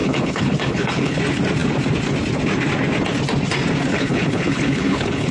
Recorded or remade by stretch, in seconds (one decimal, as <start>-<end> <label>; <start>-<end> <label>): 0.0-1.2 remade; 1.2-3.9 recorded; 3.9-5.3 remade